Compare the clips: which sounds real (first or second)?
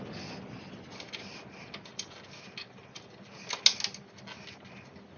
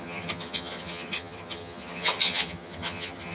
first